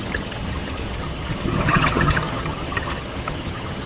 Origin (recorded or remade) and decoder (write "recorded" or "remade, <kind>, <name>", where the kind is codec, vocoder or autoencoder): remade, vocoder, HiFi-GAN